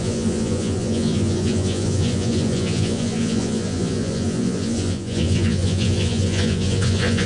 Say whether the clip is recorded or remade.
remade